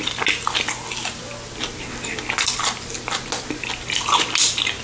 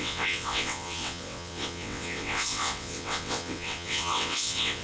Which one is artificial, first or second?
second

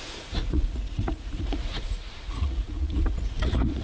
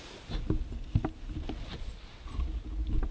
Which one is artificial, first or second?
first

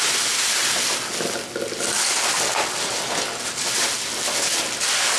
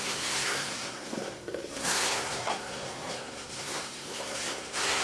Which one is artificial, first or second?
second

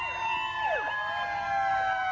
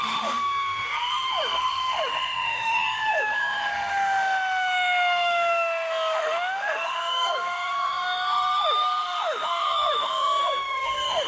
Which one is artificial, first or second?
second